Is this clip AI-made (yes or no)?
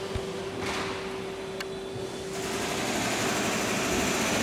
no